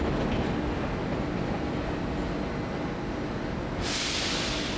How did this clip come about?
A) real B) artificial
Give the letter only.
A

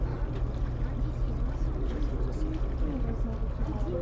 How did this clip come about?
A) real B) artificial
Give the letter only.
A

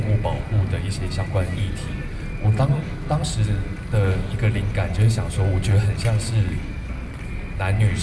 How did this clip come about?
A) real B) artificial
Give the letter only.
A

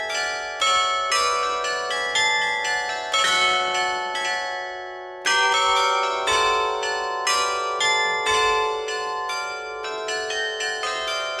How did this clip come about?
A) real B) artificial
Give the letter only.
A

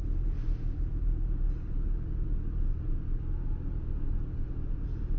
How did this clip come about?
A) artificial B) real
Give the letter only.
B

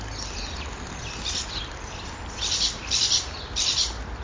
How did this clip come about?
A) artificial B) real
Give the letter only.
B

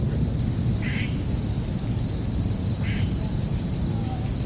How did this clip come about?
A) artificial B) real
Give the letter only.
B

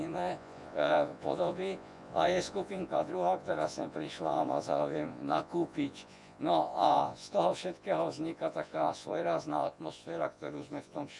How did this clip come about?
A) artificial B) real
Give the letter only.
A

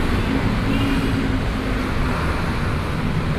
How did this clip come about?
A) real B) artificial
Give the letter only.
A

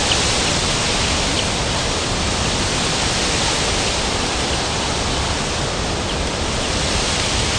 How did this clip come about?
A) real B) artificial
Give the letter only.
A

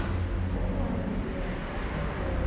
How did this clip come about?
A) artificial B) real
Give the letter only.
B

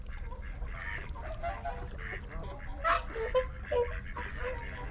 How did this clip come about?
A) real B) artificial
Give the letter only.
A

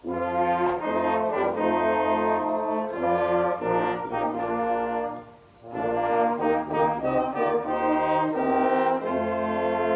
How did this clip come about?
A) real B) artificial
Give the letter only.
A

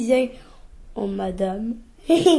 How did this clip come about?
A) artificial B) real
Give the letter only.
B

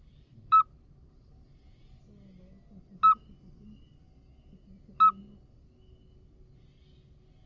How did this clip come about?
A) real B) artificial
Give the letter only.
A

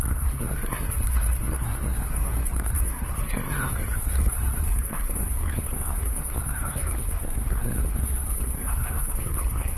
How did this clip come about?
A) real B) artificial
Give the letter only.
B